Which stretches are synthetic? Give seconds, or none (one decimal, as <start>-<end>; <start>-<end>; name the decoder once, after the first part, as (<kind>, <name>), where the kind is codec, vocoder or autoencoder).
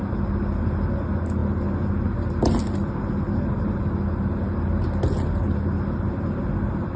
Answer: none